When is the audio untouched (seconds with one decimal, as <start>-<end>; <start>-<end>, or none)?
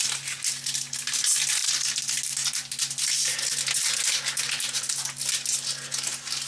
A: 0.0-6.5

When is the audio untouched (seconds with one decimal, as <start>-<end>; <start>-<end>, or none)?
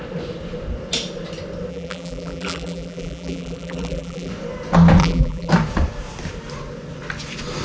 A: 0.0-1.7; 4.3-5.0; 5.5-7.6